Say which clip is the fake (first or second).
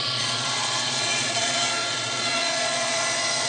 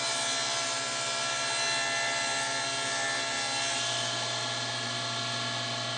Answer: first